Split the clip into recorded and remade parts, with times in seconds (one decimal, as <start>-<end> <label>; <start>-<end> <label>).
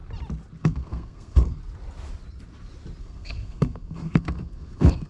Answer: 0.0-0.6 recorded; 0.6-1.6 remade; 1.6-3.0 recorded; 3.0-5.1 remade